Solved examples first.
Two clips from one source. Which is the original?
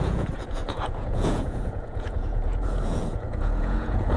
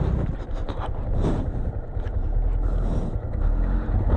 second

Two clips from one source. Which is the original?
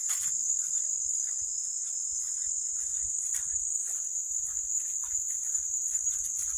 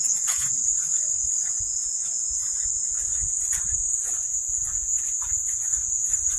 first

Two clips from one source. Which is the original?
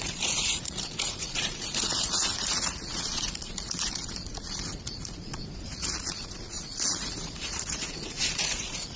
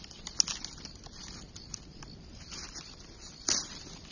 second